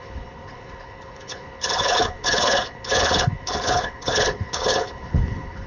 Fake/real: fake